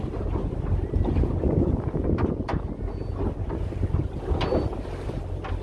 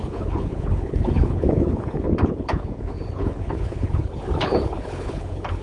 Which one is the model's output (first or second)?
second